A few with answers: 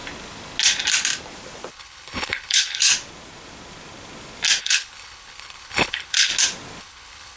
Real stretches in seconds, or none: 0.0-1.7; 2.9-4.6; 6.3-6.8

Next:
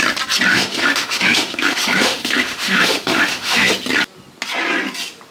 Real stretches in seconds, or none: 0.0-0.5; 3.7-5.3

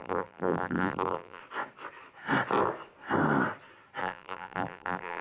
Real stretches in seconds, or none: 1.4-4.0

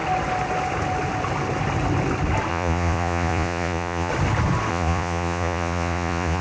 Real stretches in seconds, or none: 0.0-2.5; 4.1-4.7

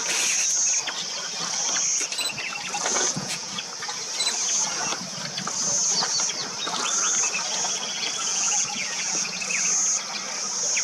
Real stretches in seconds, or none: 0.0-2.9; 3.5-8.3; 9.6-10.8

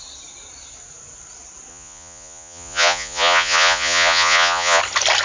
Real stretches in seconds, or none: 0.0-1.7; 4.8-5.2

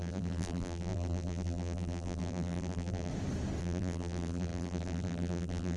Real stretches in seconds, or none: 3.1-3.6

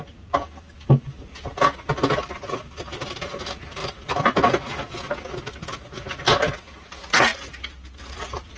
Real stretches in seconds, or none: 0.0-8.6